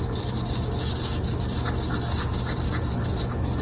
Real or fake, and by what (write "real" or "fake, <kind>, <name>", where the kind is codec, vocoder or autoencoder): real